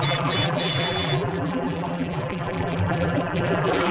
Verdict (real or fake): fake